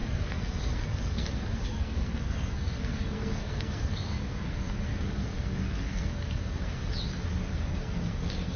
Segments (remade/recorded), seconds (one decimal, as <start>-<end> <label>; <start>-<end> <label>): 0.0-6.9 remade; 6.9-7.5 recorded; 7.5-8.6 remade